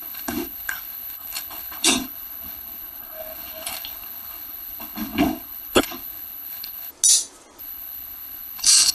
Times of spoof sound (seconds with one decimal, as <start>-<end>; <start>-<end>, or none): 0.0-6.9; 7.6-8.9